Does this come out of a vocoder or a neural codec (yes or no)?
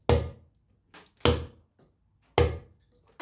no